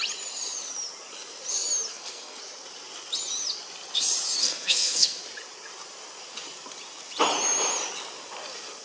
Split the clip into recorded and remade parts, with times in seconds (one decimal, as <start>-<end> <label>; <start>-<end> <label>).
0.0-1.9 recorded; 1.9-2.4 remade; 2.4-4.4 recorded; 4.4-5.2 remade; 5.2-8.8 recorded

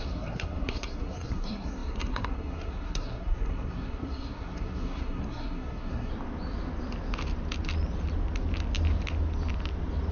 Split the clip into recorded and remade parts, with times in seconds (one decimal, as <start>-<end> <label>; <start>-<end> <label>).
0.0-6.1 remade; 6.1-10.1 recorded

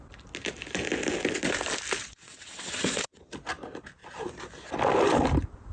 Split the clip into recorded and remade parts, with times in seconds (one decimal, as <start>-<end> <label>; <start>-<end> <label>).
0.0-2.0 recorded; 2.0-3.3 remade; 3.3-5.7 recorded

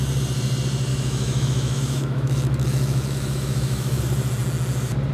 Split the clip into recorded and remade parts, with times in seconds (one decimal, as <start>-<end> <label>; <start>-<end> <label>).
0.0-0.9 recorded; 0.9-4.0 remade; 4.0-5.1 recorded

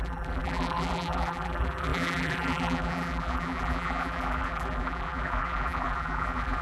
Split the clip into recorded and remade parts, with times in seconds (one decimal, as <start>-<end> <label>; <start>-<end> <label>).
0.0-6.6 remade

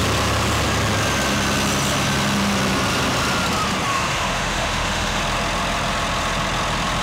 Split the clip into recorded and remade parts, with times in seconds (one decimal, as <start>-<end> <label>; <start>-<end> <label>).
0.0-3.9 recorded; 3.9-5.2 remade; 5.2-7.0 recorded